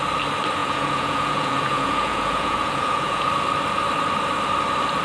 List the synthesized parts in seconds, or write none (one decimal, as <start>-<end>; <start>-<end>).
0.6-3.3